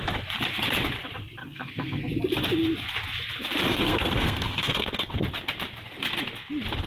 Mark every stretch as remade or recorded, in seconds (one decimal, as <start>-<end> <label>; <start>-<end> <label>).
0.0-1.4 recorded; 1.4-2.0 remade; 2.0-3.7 recorded; 3.7-5.2 remade; 5.2-6.9 recorded